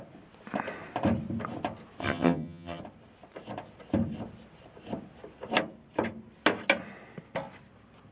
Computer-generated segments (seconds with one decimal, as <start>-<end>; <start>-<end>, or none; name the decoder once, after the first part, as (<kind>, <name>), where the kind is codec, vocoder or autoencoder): 2.0-2.8 (vocoder, HiFi-GAN)